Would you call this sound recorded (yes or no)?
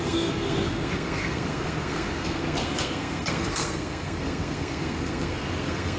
no